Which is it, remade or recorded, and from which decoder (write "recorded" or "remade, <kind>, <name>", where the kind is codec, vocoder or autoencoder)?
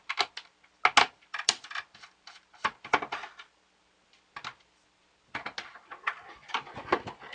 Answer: recorded